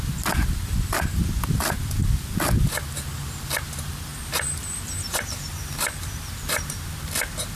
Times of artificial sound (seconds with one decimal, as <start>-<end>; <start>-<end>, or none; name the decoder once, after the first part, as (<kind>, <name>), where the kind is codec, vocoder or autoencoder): 4.1-7.0 (vocoder, BigVGAN v2)